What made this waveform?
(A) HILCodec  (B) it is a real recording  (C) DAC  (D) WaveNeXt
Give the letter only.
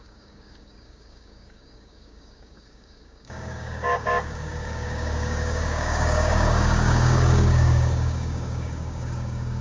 C